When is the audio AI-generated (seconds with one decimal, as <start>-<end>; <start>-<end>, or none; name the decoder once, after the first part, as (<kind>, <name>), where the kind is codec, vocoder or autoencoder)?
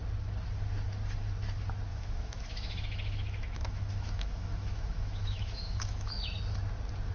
1.9-6.2 (autoencoder, DAC-VAE)